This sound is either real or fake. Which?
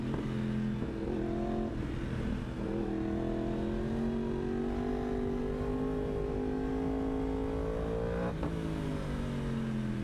real